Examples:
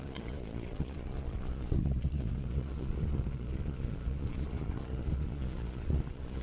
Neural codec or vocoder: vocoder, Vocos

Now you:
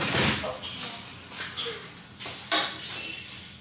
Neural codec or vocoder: none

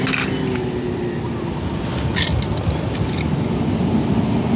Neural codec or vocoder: none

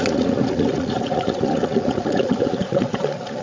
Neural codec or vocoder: vocoder, Vocos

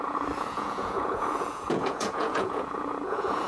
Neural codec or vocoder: vocoder, Vocos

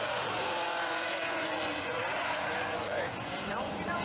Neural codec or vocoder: vocoder, Vocos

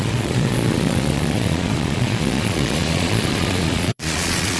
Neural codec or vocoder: vocoder, Vocos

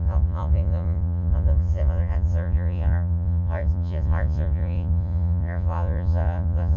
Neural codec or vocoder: vocoder, Vocos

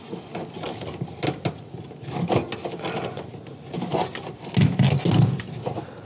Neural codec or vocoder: none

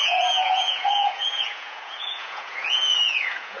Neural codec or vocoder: vocoder, Vocos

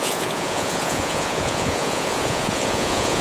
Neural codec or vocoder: vocoder, Vocos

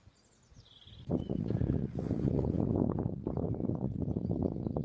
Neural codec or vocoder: vocoder, Vocos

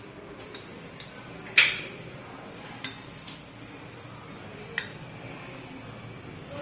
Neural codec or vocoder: none